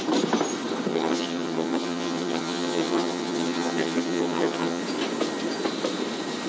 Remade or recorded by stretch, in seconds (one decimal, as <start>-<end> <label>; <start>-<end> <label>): 0.0-0.9 recorded; 0.9-4.8 remade; 4.8-6.5 recorded